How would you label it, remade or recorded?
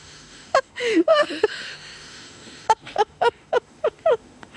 remade